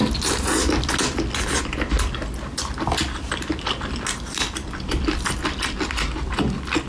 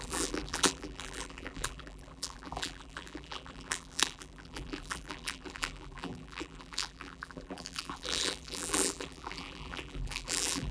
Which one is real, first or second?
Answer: first